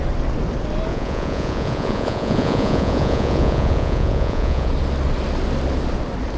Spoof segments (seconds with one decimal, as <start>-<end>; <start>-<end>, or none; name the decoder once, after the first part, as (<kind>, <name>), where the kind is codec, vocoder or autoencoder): 0.9-4.7 (vocoder, Vocos)